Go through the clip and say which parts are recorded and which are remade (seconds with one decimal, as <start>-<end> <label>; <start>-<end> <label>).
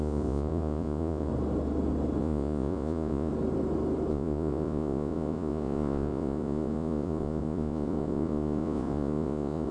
0.0-1.3 remade; 1.3-2.2 recorded; 2.2-3.3 remade; 3.3-4.1 recorded; 4.1-9.7 remade